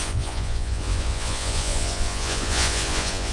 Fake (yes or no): yes